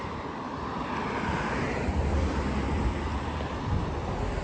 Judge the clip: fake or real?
real